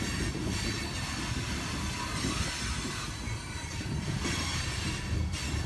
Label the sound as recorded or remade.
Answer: recorded